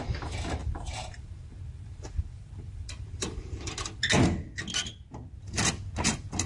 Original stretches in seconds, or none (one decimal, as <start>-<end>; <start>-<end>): 0.0-0.6; 3.7-6.5